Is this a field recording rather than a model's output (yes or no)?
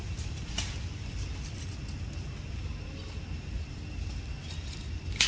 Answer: yes